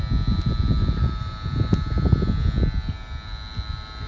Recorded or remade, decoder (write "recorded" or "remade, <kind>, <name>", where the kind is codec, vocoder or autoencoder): recorded